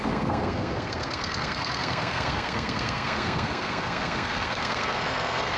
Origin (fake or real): fake